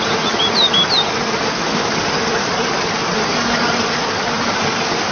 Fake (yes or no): no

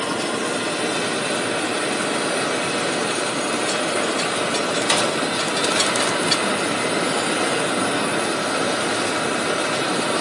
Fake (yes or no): no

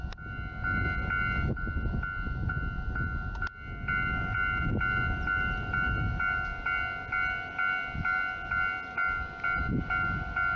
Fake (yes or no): no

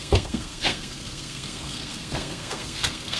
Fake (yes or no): yes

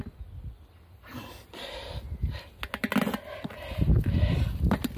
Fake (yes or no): no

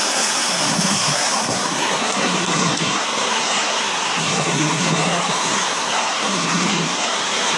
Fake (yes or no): yes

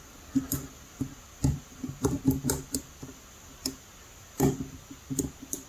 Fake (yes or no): no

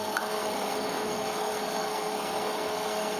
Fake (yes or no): yes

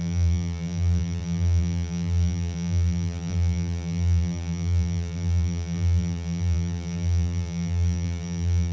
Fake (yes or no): yes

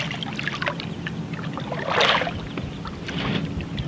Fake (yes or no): no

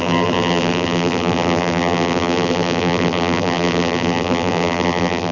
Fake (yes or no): yes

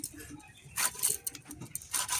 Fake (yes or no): no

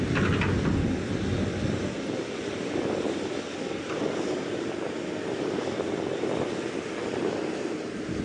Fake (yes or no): no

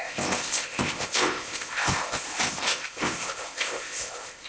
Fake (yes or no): yes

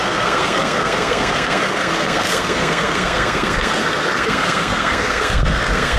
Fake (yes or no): yes